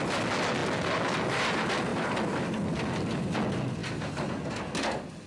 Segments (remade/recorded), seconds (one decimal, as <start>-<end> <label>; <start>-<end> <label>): 0.0-1.9 recorded; 1.9-3.3 remade; 3.3-5.3 recorded